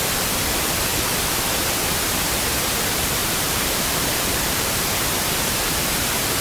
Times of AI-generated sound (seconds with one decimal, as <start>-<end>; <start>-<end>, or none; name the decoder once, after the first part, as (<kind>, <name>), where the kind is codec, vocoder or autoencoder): 3.2-5.0 (vocoder, BigVGAN v2)